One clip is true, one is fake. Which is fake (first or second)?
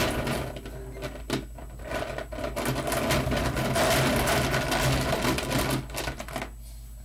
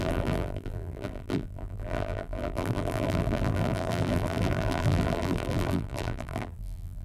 second